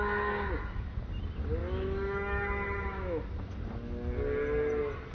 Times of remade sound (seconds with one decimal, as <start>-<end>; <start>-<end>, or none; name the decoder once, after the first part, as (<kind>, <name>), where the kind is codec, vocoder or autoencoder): 1.6-3.2 (autoencoder, DAC-VAE)